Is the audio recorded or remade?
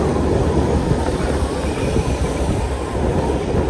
recorded